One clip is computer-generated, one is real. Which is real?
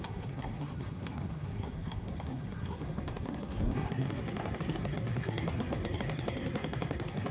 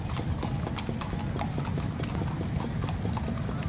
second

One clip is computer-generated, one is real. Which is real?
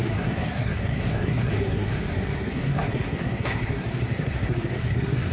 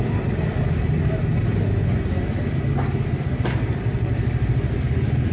second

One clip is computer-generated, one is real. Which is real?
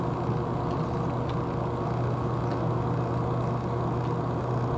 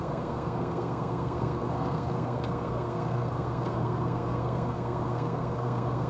first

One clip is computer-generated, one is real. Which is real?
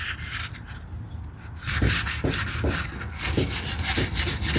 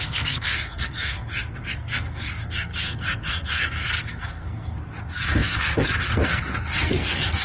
first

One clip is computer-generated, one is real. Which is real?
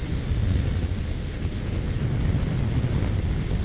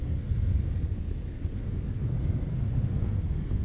first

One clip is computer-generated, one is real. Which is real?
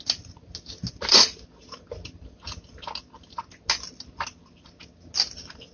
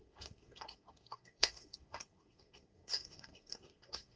first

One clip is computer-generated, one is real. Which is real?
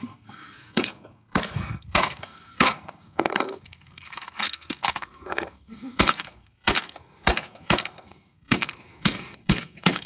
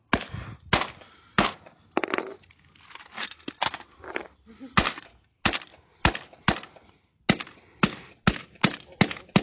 second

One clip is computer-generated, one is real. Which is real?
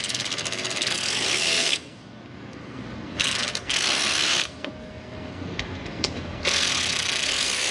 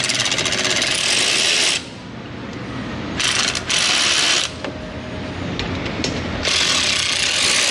second